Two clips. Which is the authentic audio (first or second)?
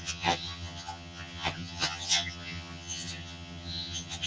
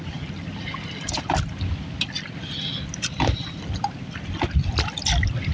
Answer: second